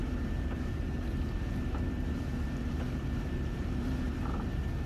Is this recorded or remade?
remade